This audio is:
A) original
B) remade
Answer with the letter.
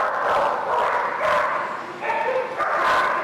A